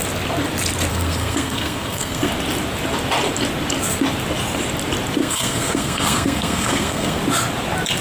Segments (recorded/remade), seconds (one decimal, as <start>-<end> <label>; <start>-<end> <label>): 0.0-0.9 recorded; 0.9-2.3 remade; 2.3-5.2 recorded; 5.2-7.2 remade; 7.2-8.0 recorded